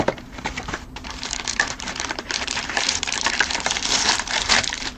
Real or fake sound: fake